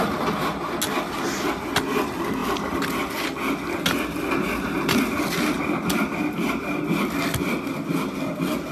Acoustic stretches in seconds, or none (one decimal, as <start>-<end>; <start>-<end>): 0.0-8.7